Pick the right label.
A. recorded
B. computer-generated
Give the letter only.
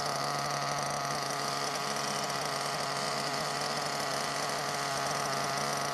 A